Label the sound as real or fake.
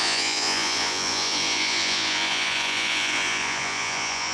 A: fake